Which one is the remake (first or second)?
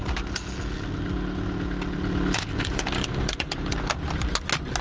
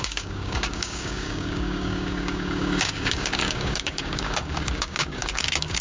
second